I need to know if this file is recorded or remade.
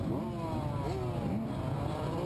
recorded